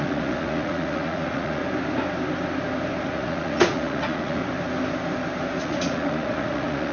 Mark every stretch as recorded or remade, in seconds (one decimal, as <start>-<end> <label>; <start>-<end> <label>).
0.0-1.6 remade; 1.6-3.0 recorded; 3.0-4.4 remade; 4.4-5.6 recorded; 5.6-6.9 remade